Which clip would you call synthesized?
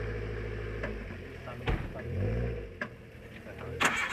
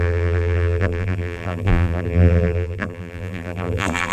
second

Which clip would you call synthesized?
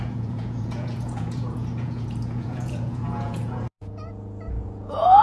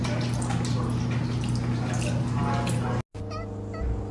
first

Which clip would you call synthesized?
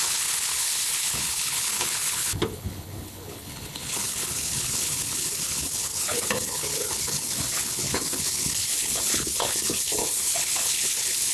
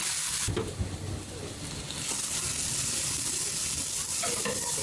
first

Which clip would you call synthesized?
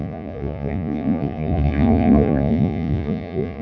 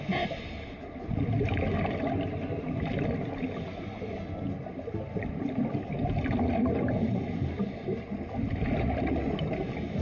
first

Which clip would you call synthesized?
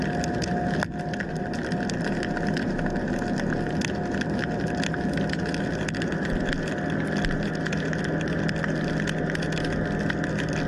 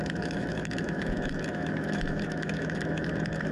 second